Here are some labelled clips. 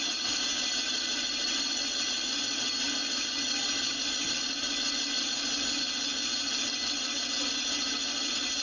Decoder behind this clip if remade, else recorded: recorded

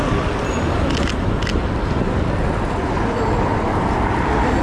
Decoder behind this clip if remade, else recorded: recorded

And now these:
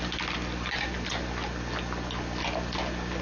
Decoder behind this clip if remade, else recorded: recorded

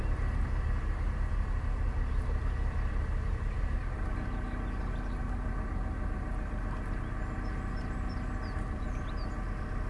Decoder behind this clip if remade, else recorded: recorded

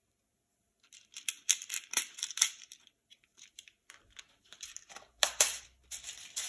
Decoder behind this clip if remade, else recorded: remade, vocoder, BigVGAN v2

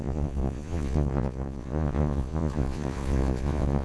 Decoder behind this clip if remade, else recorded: remade, vocoder, Vocos